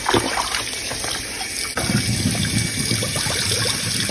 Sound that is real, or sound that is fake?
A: real